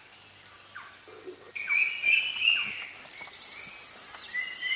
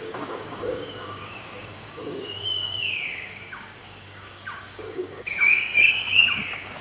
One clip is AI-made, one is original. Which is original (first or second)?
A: first